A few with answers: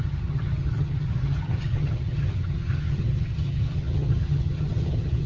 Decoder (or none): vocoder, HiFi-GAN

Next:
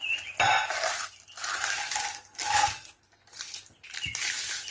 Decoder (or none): none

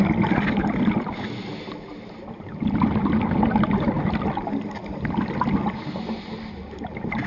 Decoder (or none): none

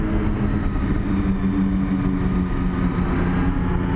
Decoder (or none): none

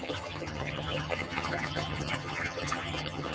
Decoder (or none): vocoder, HiFi-GAN